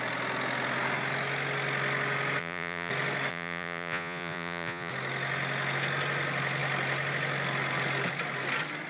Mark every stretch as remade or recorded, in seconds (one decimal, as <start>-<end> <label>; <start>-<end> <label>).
0.0-2.4 recorded; 2.4-2.9 remade; 2.9-3.3 recorded; 3.3-4.9 remade; 4.9-8.9 recorded